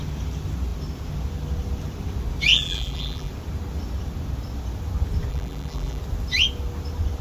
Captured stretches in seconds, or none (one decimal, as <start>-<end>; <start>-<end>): 0.0-2.5; 3.3-5.3; 6.0-7.2